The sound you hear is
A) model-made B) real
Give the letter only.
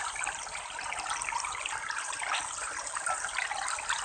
B